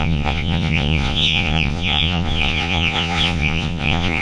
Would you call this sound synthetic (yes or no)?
yes